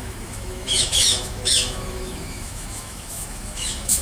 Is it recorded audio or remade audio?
remade